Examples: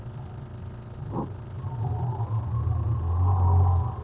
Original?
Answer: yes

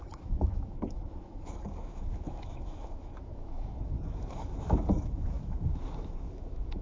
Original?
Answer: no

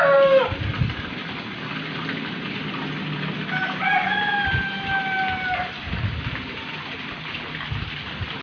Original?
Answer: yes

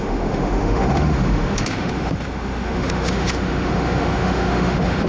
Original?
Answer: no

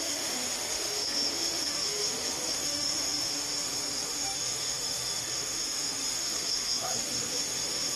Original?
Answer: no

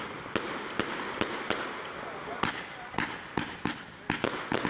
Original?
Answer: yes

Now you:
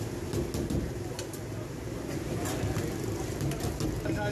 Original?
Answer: yes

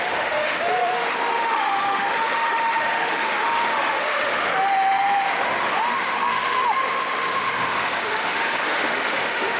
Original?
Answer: no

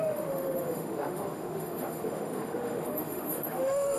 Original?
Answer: no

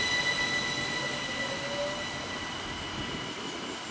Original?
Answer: yes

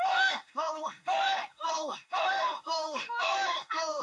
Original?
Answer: no